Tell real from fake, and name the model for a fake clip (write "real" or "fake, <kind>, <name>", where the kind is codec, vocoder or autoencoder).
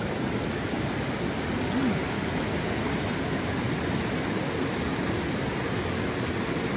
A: real